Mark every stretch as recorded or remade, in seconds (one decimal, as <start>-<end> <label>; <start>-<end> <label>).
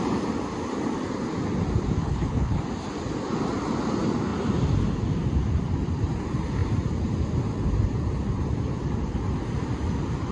0.0-2.0 recorded; 2.0-2.6 remade; 2.6-10.3 recorded